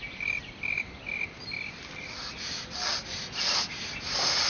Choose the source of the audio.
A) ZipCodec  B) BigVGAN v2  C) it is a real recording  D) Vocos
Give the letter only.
C